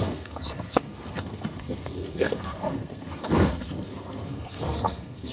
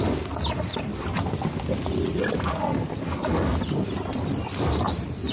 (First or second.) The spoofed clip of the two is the first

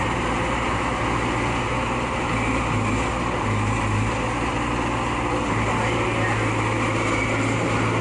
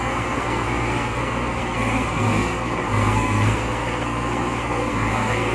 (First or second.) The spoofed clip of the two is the second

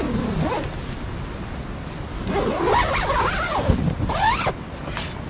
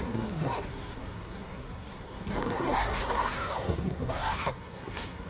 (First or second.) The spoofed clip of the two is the second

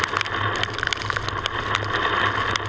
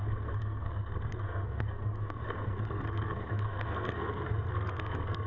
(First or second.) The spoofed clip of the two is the second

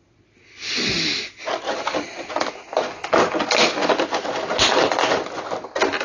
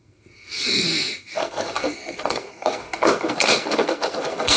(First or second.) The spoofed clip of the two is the second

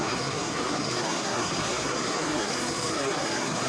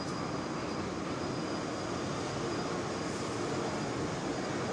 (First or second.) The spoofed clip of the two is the first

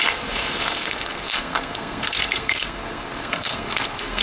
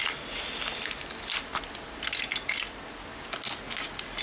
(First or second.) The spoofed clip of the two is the first